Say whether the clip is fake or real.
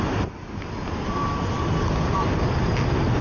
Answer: real